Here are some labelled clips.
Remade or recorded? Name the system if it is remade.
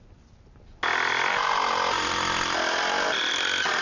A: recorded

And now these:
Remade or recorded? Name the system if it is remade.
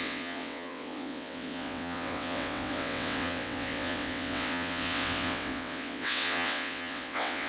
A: remade, vocoder, WaveNeXt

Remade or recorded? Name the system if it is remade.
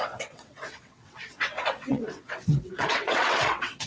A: remade, vocoder, WaveNeXt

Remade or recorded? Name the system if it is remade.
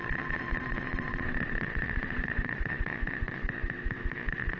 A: remade, vocoder, WaveNeXt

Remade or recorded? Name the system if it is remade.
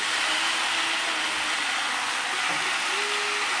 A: recorded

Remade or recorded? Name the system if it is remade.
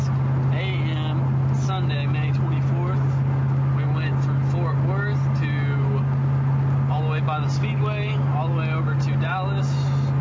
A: recorded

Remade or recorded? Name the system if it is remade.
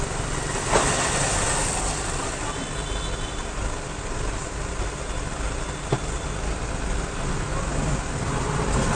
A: recorded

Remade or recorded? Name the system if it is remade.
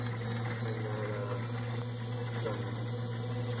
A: recorded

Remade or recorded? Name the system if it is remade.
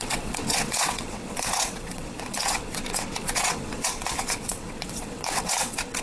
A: remade, vocoder, WaveNeXt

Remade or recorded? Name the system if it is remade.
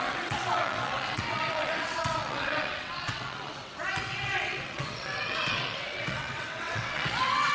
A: remade, vocoder, WaveNeXt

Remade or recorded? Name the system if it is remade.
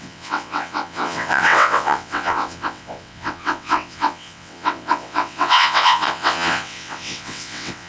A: remade, vocoder, WaveNeXt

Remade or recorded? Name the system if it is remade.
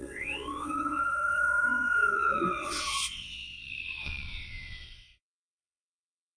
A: remade, vocoder, WaveNeXt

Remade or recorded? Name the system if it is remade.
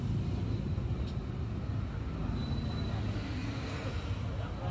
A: recorded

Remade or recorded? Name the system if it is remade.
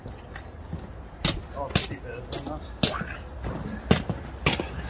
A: recorded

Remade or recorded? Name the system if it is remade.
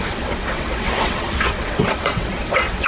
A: remade, vocoder, WaveNeXt